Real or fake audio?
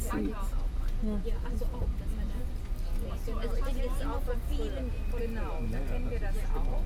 real